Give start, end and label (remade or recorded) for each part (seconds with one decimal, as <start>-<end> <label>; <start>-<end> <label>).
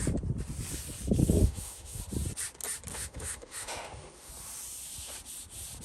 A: 0.0-1.2 recorded; 1.2-2.0 remade; 2.0-2.9 recorded; 2.9-4.3 remade; 4.3-5.8 recorded